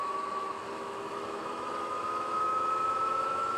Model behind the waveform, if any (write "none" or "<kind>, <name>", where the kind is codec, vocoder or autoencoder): autoencoder, DAC-VAE